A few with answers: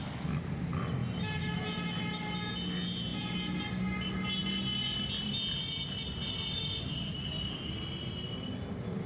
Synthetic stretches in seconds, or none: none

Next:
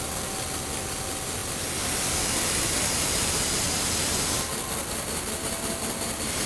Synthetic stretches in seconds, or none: none

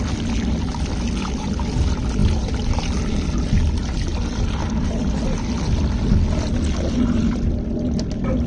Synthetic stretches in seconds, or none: none